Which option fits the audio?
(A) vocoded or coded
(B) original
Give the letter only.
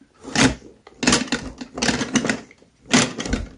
B